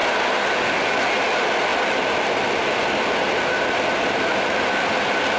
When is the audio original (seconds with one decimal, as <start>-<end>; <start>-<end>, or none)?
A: 0.0-1.7; 3.2-4.3